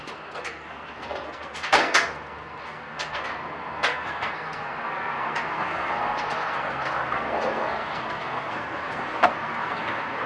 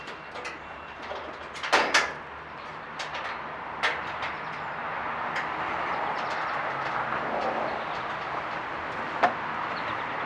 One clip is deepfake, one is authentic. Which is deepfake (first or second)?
first